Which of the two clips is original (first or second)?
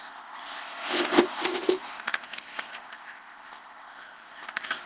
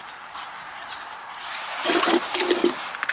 second